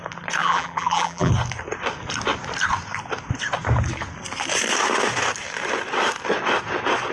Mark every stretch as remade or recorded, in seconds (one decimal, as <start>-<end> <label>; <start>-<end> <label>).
0.0-0.4 recorded; 0.4-1.3 remade; 1.3-7.1 recorded